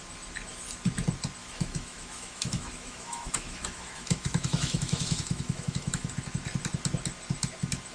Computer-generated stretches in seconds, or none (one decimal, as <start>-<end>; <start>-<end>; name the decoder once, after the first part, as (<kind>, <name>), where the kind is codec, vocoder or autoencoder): 1.4-6.1 (autoencoder, DAC-VAE)